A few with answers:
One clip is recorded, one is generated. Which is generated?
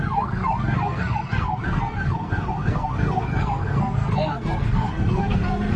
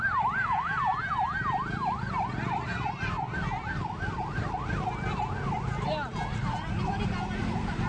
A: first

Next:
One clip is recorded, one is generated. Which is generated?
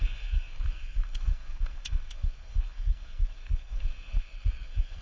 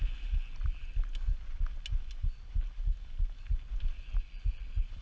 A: first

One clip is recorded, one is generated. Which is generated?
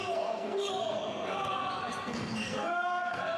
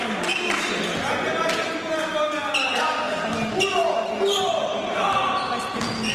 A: first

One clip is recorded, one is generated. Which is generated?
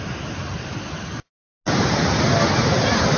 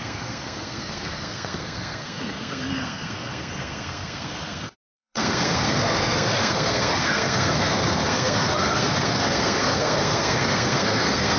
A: second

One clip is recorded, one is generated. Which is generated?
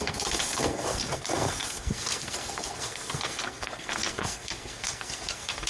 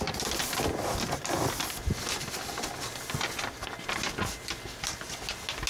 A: first